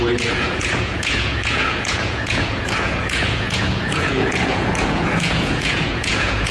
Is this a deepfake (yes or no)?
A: yes